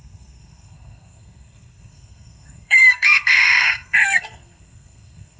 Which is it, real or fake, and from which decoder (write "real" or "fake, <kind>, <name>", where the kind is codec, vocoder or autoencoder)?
fake, codec, SNAC